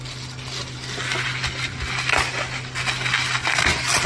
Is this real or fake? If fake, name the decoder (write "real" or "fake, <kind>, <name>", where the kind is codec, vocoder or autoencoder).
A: real